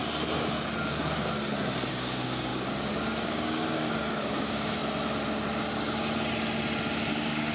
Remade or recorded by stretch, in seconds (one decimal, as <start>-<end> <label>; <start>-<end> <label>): 0.0-1.9 recorded; 1.9-4.8 remade; 4.8-7.1 recorded; 7.1-7.5 remade